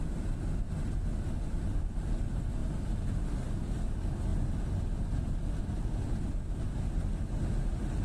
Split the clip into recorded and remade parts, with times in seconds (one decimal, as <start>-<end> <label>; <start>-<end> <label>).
0.0-2.6 recorded; 2.6-3.5 remade; 3.5-8.0 recorded